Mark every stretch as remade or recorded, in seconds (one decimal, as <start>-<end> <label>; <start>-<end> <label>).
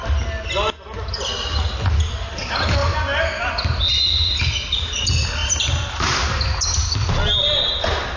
0.0-8.2 recorded